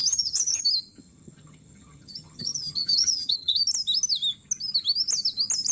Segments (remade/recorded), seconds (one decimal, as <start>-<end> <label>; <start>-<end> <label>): 0.0-0.6 remade; 0.6-1.0 recorded; 1.0-3.6 remade; 3.6-5.7 recorded